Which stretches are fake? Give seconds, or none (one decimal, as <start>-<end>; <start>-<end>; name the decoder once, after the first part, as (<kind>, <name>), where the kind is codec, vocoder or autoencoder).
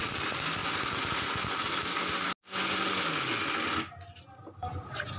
none